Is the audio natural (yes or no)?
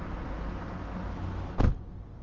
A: yes